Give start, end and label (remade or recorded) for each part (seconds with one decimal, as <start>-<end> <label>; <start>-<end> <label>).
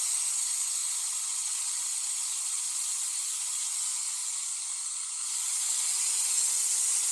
0.0-0.8 recorded; 0.8-3.3 remade; 3.3-4.2 recorded; 4.2-6.0 remade; 6.0-7.1 recorded